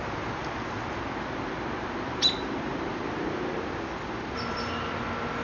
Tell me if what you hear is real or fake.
real